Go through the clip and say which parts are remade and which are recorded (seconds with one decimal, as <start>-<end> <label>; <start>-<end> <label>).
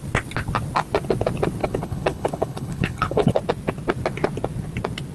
0.0-1.6 recorded; 1.6-3.4 remade; 3.4-5.1 recorded